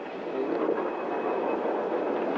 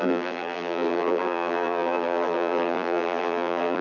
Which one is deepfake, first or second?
second